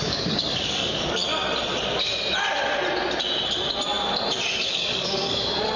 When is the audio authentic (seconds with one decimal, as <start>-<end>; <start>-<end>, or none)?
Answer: 1.2-4.7